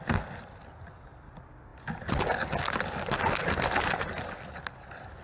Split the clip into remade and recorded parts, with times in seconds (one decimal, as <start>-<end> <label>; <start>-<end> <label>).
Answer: 0.0-5.2 recorded